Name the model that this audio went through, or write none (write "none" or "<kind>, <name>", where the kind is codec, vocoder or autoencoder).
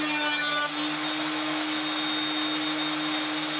none